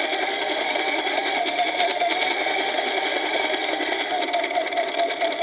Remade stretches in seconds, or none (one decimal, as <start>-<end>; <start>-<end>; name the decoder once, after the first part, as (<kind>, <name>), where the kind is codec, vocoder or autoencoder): 0.0-4.2 (autoencoder, DAC-VAE)